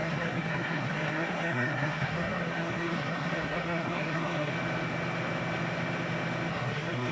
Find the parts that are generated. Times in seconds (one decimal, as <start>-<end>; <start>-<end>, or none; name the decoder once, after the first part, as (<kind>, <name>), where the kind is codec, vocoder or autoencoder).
0.0-4.5 (codec, SNAC); 6.5-7.1